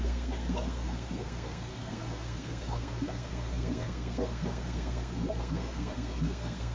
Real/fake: fake